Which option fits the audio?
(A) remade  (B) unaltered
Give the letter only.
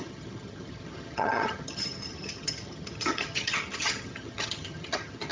A